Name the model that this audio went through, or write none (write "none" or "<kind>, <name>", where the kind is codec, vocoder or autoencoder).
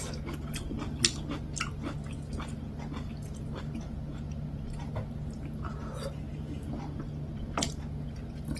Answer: none